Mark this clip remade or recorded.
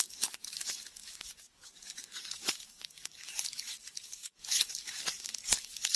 remade